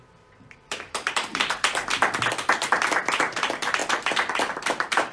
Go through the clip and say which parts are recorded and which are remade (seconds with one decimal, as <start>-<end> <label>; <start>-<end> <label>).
0.0-1.8 remade; 1.8-3.2 recorded; 3.2-3.8 remade; 3.8-4.3 recorded; 4.3-5.1 remade